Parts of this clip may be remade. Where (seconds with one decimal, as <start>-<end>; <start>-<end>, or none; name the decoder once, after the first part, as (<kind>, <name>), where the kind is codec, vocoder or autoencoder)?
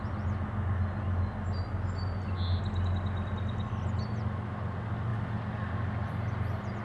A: none